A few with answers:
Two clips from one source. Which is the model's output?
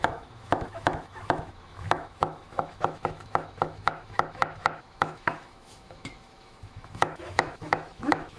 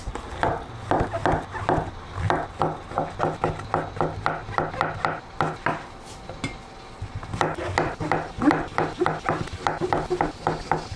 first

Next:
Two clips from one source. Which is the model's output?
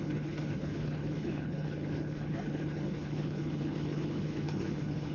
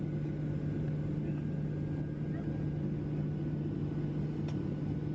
first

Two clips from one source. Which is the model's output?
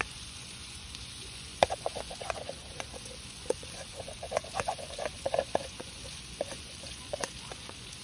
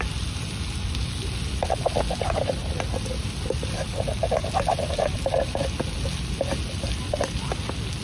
first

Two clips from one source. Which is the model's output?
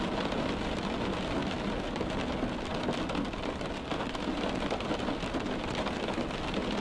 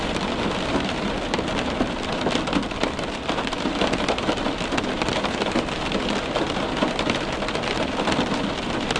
second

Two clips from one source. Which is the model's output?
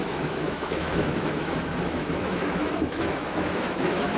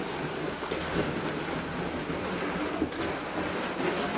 first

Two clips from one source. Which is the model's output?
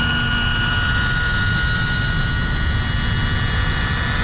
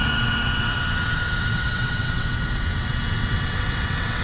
second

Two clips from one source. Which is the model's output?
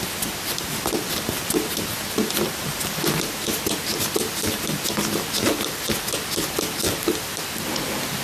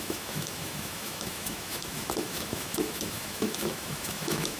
second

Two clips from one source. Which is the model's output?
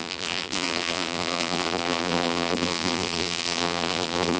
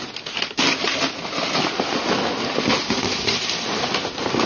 first